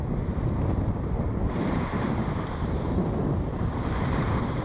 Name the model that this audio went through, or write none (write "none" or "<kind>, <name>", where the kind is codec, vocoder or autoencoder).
vocoder, BigVGAN v2